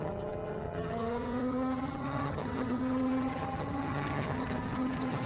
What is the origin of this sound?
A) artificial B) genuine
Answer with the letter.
A